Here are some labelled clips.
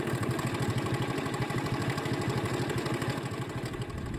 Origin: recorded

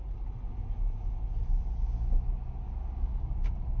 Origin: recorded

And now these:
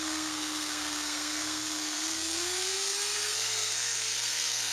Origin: remade